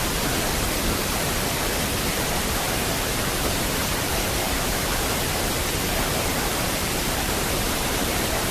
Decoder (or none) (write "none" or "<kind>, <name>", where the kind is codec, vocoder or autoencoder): vocoder, BigVGAN v2